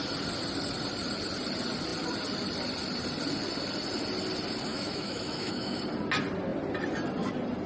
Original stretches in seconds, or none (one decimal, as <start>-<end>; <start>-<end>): 0.0-4.7; 5.8-7.7